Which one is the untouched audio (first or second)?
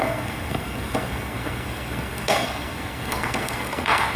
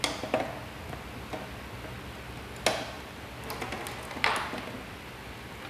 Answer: second